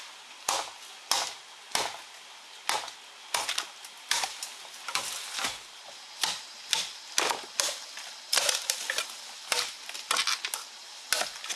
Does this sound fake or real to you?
real